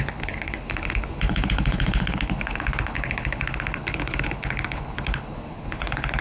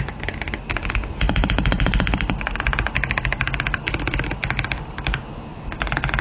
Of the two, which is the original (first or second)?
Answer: second